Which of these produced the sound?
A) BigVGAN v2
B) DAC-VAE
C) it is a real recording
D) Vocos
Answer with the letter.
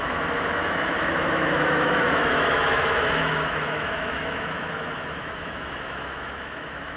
B